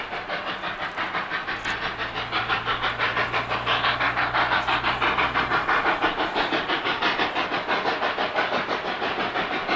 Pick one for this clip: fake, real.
real